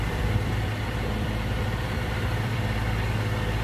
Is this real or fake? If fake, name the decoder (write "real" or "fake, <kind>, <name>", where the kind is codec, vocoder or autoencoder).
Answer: fake, vocoder, BigVGAN v2